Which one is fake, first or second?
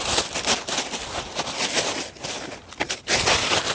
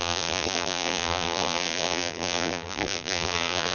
second